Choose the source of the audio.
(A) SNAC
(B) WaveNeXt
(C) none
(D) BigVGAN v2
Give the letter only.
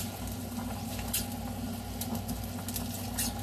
C